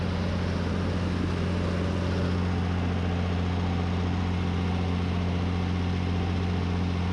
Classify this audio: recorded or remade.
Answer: recorded